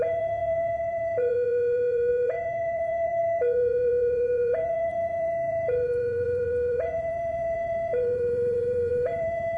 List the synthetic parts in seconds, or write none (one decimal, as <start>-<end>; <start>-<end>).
0.0-9.6